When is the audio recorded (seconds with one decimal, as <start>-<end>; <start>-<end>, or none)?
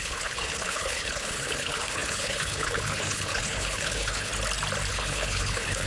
4.3-4.9